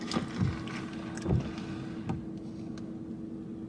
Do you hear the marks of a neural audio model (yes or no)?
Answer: no